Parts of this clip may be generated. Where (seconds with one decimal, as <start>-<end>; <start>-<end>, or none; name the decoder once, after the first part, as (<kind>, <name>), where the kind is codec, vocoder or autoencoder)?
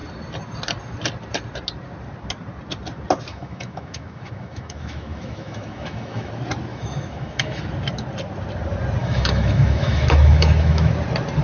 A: 3.3-6.3 (autoencoder, DAC-VAE); 6.7-7.6; 9.0-10.9